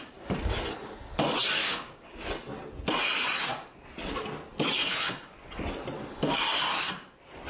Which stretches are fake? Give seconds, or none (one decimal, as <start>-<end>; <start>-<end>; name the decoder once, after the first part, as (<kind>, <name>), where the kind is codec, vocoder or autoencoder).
1.6-2.3 (codec, DAC)